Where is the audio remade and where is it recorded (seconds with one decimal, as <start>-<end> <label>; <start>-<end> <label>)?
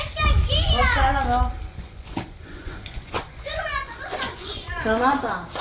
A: 0.0-1.7 recorded; 1.7-5.1 remade; 5.1-5.6 recorded